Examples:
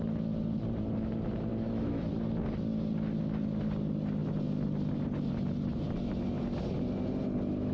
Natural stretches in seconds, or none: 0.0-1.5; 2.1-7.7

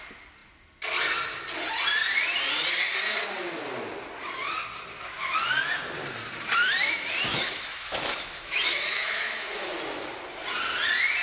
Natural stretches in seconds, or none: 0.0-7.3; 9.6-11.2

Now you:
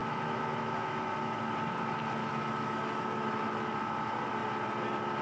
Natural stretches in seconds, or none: 1.2-2.2; 3.7-5.2

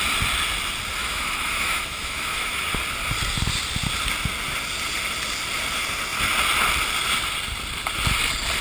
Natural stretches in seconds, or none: 0.0-1.0; 2.7-8.6